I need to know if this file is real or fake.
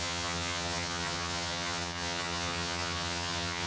fake